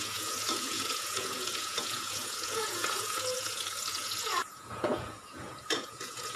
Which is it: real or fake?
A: fake